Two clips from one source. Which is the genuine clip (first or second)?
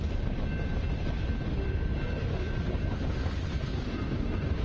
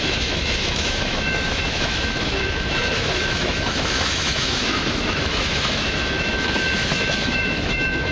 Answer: first